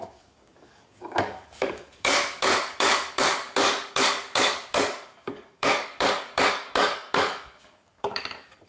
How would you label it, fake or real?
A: fake